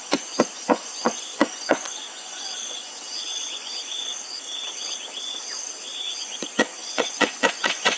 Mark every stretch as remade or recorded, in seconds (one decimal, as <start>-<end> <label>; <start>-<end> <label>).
0.0-4.1 remade; 4.1-6.2 recorded; 6.2-8.0 remade